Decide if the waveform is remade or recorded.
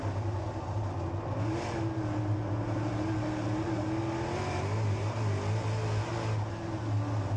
recorded